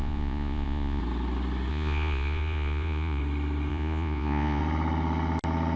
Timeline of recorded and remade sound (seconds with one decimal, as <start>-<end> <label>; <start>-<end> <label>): 0.0-1.0 remade; 1.0-1.7 recorded; 1.7-3.2 remade; 3.2-3.7 recorded; 3.7-4.6 remade; 4.6-5.8 recorded